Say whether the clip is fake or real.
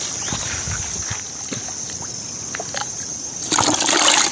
real